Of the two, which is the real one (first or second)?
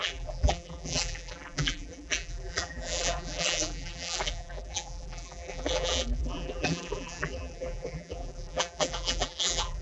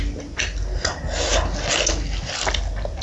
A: second